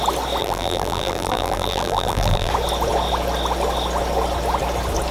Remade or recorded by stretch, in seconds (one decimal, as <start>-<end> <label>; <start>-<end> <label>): 0.0-0.4 recorded; 0.4-2.5 remade; 2.5-5.1 recorded